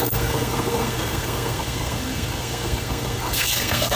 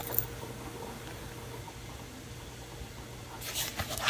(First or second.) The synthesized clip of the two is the first